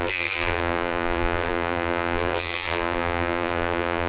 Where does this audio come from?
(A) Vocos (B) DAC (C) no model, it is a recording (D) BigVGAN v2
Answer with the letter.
D